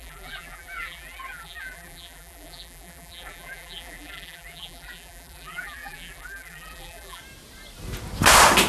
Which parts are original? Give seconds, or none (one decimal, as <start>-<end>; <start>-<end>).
7.2-8.7